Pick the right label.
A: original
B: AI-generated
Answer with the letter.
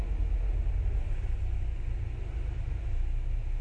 A